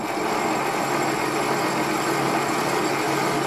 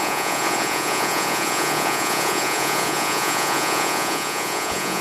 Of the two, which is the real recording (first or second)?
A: first